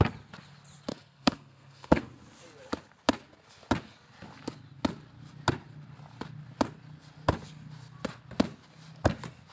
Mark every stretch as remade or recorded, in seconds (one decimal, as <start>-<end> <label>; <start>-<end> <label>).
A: 0.0-0.9 recorded; 0.9-2.0 remade; 2.0-9.5 recorded